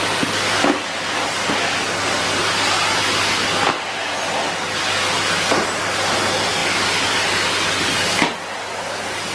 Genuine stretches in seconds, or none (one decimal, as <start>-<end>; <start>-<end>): 0.0-9.3